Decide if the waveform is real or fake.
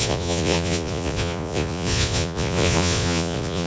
fake